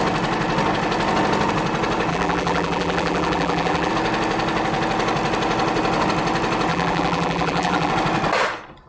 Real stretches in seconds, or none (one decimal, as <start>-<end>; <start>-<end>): 0.0-2.1; 3.9-6.7; 7.9-8.9